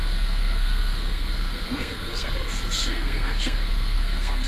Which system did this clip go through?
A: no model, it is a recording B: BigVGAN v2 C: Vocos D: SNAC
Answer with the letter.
D